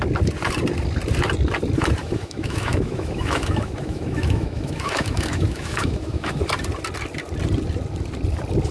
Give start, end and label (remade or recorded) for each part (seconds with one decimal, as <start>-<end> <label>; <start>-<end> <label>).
0.0-2.0 recorded; 2.0-6.4 remade; 6.4-8.7 recorded